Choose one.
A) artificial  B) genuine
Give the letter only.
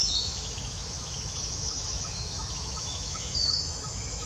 A